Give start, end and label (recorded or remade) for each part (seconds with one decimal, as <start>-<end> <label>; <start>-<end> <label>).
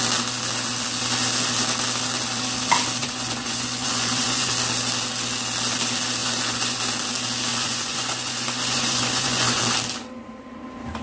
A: 0.0-3.0 recorded; 3.0-4.5 remade; 4.5-6.2 recorded; 6.2-6.8 remade; 6.8-7.5 recorded; 7.5-9.6 remade; 9.6-11.0 recorded